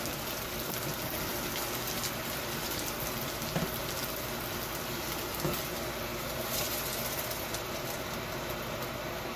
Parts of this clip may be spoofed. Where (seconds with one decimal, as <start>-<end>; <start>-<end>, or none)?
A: none